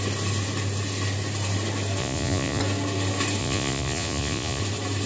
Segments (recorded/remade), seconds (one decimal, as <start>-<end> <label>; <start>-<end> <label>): 0.0-2.0 recorded; 2.0-2.6 remade; 2.6-3.4 recorded; 3.4-4.6 remade; 4.6-5.1 recorded